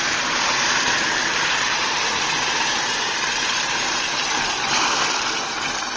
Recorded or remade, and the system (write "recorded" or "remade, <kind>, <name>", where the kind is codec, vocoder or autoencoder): remade, vocoder, BigVGAN v2